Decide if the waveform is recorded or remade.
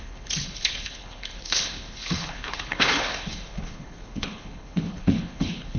remade